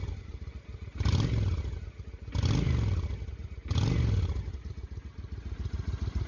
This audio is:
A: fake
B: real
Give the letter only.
B